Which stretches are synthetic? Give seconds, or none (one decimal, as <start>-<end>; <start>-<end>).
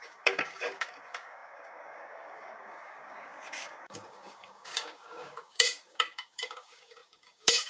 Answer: 0.0-7.7